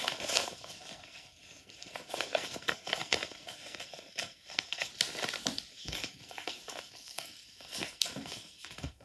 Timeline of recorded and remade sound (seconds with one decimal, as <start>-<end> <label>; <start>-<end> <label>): 0.0-4.9 remade; 4.9-5.7 recorded; 5.7-9.0 remade